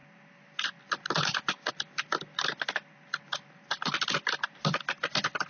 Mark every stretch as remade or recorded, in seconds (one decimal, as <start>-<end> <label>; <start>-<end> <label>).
0.0-5.5 recorded